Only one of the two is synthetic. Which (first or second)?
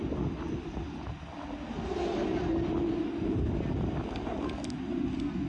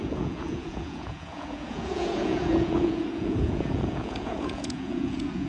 second